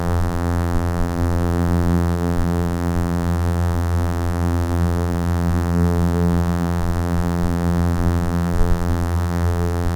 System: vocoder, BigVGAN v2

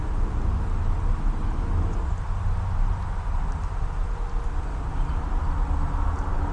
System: none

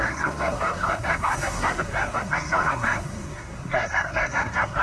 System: codec, SNAC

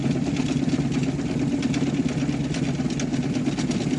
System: none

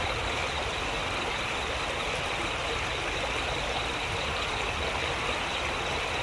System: none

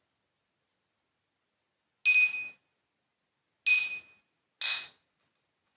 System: none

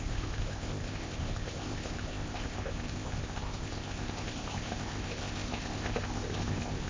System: codec, ZipCodec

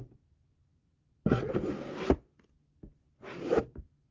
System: none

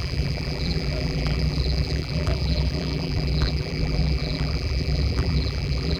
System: vocoder, BigVGAN v2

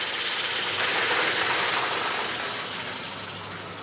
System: none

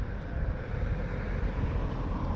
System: none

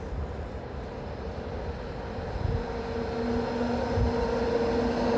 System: none